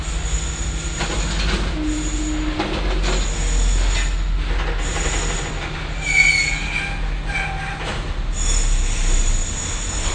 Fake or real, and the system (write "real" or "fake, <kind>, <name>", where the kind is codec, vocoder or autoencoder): real